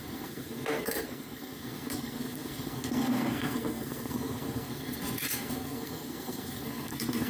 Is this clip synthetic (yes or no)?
yes